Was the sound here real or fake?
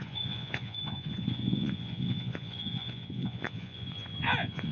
fake